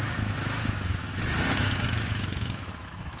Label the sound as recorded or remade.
remade